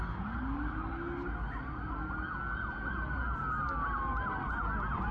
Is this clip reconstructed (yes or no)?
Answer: no